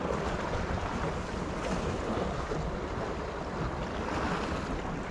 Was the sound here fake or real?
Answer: real